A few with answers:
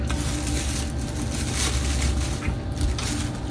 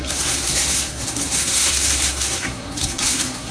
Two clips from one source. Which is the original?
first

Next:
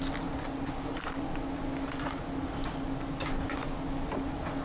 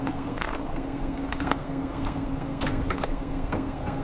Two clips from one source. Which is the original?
first